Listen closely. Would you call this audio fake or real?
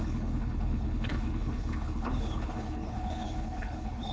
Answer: fake